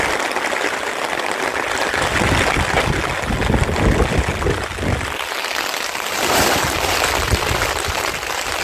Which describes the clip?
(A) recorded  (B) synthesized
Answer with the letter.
A